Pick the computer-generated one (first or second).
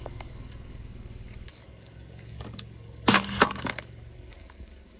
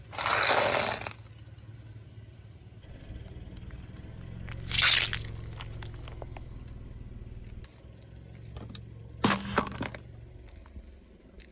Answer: first